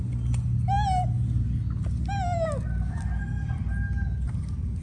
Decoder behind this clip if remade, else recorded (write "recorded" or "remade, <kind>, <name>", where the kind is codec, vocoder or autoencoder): recorded